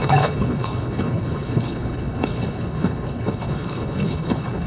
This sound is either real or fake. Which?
fake